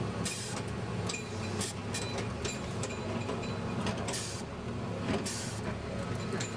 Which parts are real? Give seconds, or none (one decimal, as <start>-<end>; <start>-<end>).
0.0-6.6